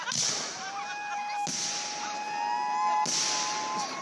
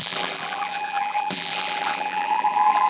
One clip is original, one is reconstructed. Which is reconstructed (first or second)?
second